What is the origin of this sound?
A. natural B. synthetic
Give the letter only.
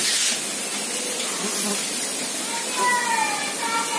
A